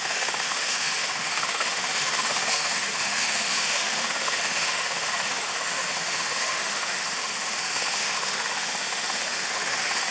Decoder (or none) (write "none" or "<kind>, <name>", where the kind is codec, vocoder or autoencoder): autoencoder, DAC-VAE